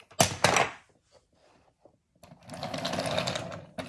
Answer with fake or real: real